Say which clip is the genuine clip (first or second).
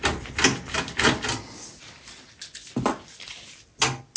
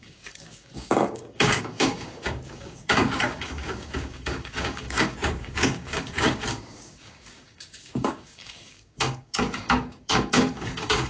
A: first